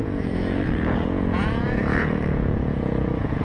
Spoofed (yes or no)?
yes